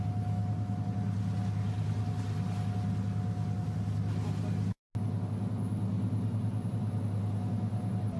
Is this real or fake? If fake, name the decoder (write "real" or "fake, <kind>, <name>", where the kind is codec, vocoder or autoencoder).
real